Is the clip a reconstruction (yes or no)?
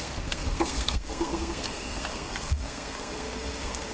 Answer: yes